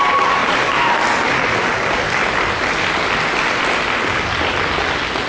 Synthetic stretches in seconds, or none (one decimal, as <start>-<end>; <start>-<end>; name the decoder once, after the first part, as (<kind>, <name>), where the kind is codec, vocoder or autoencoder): none